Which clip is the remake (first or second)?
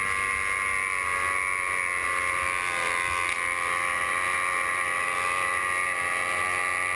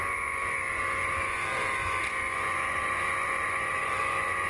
second